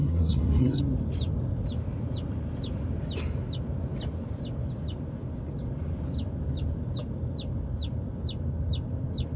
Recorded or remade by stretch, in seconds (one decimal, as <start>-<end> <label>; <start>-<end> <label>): 0.0-0.8 remade; 0.8-9.4 recorded